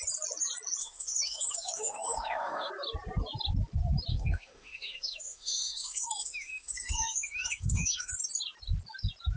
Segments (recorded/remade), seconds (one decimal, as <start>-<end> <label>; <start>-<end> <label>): 0.0-0.8 recorded; 0.8-2.7 remade; 2.7-4.1 recorded; 4.1-8.1 remade; 8.1-9.4 recorded